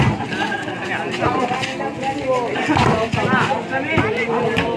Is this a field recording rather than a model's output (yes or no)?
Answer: yes